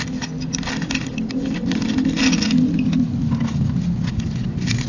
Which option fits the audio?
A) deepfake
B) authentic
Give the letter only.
B